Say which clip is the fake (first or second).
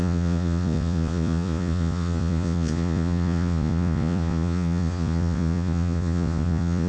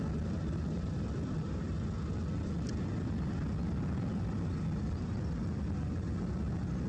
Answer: first